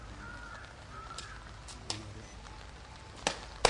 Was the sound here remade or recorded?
recorded